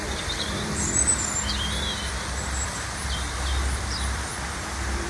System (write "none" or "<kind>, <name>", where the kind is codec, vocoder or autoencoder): vocoder, BigVGAN v2